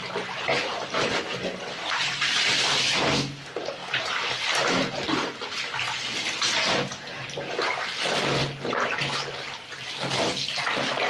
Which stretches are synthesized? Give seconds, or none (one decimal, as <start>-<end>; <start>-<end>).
0.0-11.1